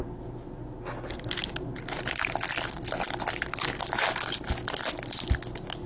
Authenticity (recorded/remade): recorded